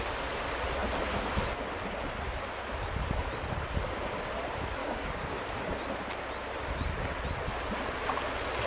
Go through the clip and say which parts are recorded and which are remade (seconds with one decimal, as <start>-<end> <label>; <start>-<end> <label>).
0.0-4.8 recorded; 4.8-5.4 remade; 5.4-8.7 recorded